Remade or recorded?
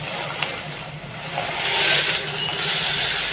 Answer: recorded